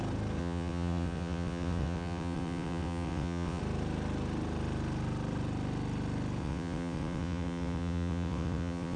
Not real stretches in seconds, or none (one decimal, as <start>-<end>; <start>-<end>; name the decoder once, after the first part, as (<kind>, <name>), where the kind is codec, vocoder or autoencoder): 0.4-3.6 (vocoder, WaveNeXt); 6.4-9.0